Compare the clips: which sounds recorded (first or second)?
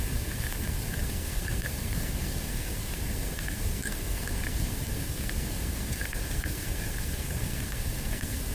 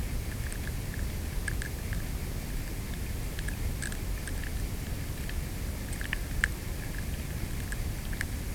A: second